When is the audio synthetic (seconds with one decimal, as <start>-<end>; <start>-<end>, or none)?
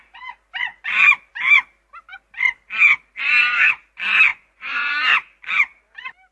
4.3-4.9